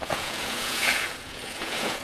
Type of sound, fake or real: fake